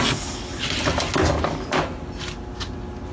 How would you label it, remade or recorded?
recorded